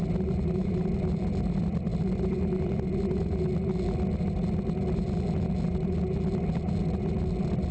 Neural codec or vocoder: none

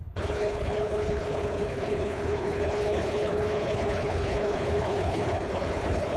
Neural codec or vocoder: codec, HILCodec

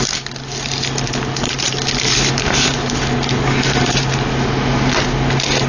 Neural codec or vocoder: none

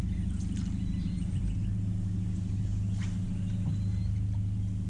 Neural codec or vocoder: none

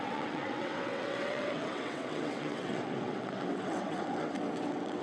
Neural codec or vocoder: vocoder, WaveNeXt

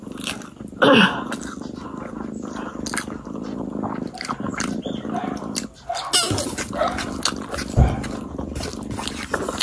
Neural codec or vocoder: none